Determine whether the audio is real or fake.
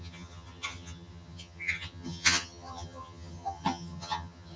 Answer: fake